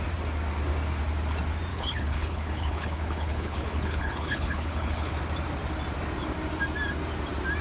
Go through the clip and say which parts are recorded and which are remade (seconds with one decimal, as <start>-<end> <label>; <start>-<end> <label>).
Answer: 0.0-1.7 recorded; 1.7-5.1 remade; 5.1-7.6 recorded